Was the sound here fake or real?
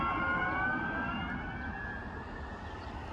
real